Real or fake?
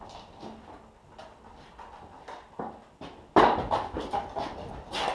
real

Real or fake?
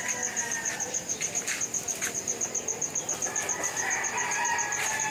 real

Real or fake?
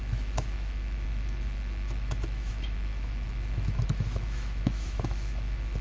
fake